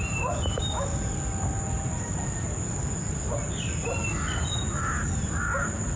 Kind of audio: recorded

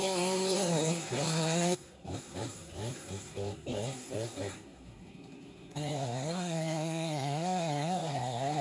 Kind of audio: remade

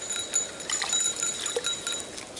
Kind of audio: recorded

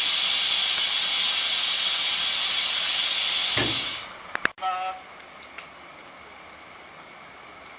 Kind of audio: recorded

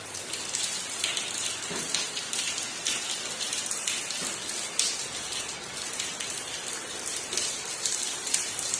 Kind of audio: recorded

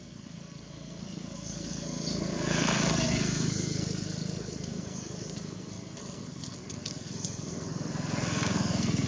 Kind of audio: remade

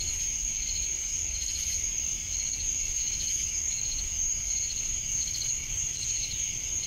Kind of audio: remade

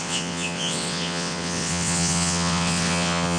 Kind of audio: remade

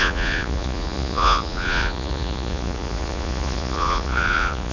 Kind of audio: remade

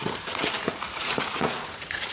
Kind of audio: remade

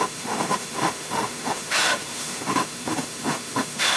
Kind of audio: remade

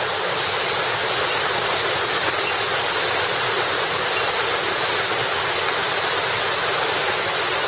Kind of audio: recorded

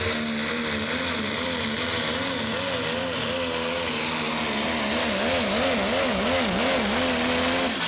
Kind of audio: recorded